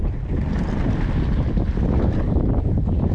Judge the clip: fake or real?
real